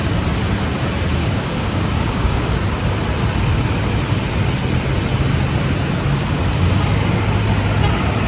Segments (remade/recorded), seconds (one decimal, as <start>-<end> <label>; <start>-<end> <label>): 0.0-1.2 recorded; 1.2-2.5 remade; 2.5-8.3 recorded